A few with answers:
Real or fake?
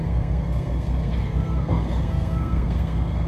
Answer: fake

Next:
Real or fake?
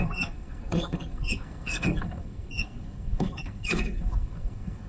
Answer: fake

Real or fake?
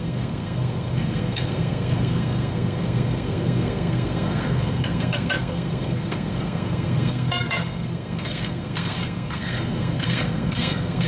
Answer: fake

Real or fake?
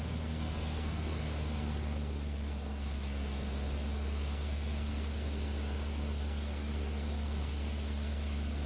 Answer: fake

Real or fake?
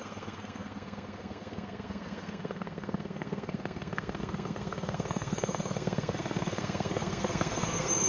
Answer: fake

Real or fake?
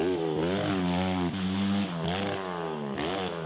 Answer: real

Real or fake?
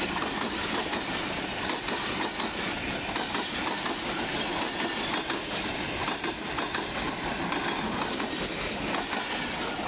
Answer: real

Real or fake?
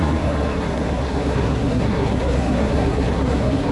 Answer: fake